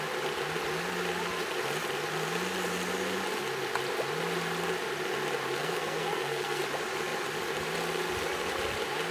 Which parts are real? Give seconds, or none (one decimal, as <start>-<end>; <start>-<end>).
0.0-5.6; 6.6-9.1